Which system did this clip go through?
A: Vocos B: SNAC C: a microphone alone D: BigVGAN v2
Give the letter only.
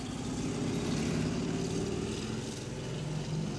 C